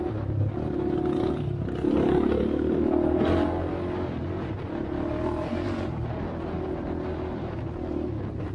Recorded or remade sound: recorded